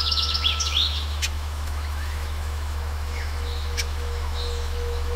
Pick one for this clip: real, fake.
fake